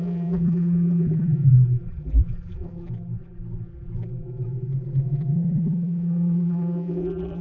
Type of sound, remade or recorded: remade